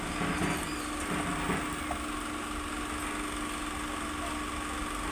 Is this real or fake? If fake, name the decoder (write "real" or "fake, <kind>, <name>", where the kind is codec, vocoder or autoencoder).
real